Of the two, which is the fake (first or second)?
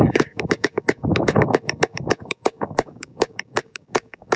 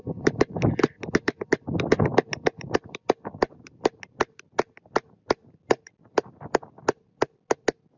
first